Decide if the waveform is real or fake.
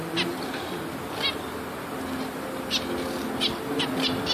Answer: fake